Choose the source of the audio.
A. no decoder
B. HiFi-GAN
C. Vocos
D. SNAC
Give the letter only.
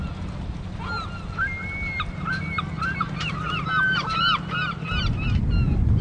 A